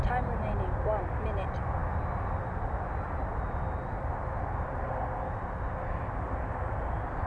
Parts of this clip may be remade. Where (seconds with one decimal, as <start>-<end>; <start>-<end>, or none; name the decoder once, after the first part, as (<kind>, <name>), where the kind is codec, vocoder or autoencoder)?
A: none